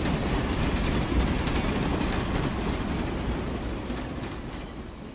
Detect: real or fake real